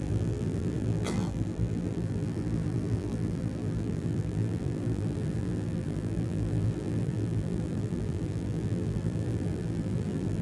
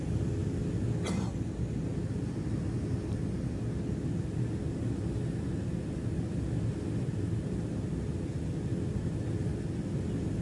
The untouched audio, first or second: second